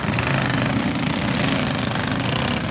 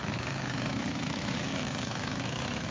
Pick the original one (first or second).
first